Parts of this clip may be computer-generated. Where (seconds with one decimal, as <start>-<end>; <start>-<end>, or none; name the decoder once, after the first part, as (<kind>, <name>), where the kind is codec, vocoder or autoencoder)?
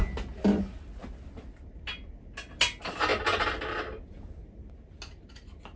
none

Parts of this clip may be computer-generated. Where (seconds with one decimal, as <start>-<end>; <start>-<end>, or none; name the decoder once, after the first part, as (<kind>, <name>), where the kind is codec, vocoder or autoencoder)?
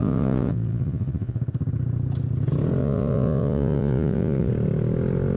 0.0-1.4 (vocoder, Vocos); 2.8-4.5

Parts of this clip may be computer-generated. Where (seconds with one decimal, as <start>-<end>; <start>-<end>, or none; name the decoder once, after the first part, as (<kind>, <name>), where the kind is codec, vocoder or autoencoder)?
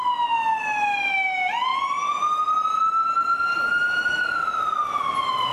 none